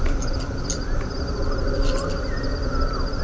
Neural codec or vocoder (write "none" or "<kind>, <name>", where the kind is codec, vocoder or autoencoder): none